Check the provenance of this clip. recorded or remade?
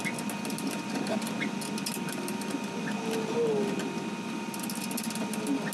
recorded